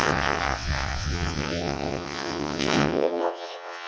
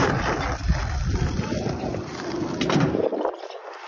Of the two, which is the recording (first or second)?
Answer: second